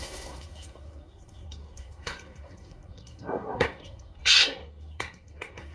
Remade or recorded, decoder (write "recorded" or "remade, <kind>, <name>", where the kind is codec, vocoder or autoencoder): remade, codec, SNAC